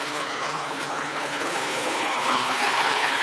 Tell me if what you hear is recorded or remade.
remade